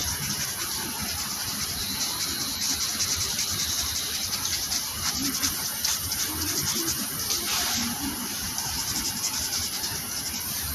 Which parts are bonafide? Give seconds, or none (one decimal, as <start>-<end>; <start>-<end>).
none